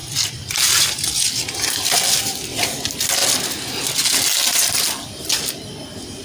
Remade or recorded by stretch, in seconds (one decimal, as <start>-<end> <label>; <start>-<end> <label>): 0.0-6.2 recorded